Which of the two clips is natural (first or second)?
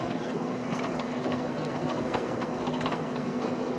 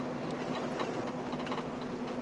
second